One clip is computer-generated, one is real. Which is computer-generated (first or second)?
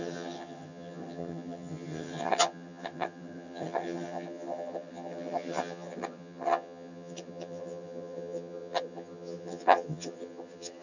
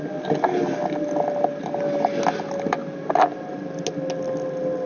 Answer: first